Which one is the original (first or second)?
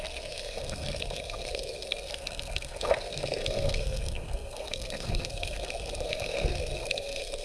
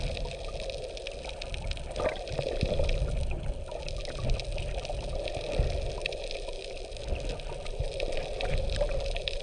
second